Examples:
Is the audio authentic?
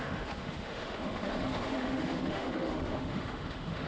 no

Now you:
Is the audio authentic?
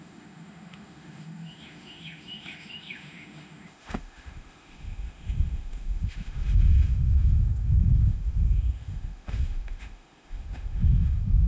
no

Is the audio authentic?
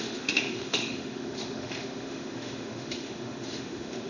no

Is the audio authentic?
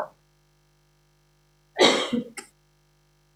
yes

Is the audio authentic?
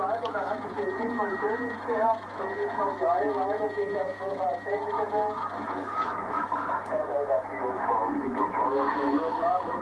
no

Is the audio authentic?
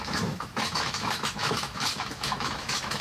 no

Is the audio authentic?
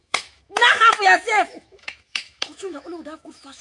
no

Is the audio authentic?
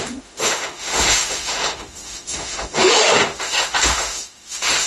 no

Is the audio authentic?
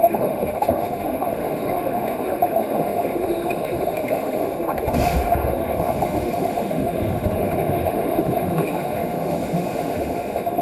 no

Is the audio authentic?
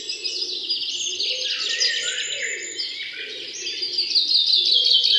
yes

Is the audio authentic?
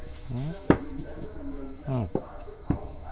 no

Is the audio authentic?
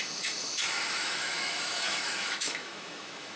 no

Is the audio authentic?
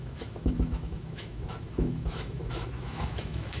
no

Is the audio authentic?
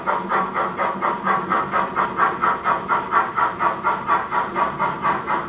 yes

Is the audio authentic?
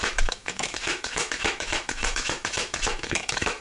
no